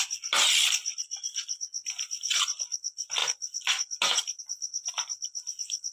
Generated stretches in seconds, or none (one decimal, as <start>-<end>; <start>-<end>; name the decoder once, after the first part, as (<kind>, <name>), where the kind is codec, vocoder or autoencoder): none